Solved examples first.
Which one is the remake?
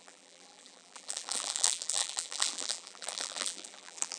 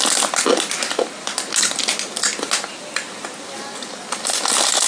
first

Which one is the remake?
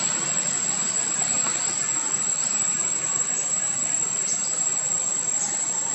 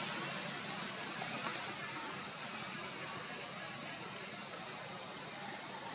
first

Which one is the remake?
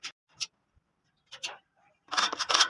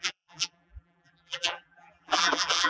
second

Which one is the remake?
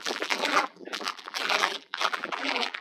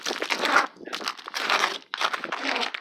first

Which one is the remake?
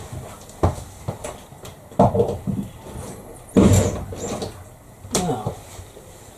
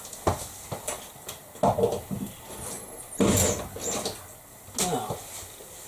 first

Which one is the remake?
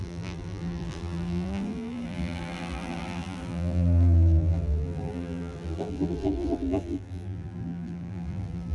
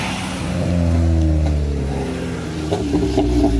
first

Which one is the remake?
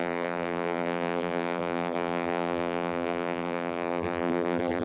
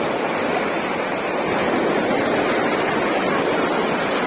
first